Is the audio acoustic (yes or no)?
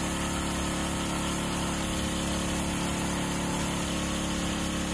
yes